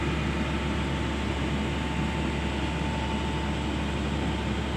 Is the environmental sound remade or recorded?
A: recorded